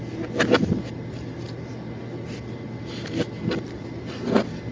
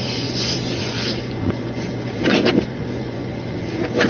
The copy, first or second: second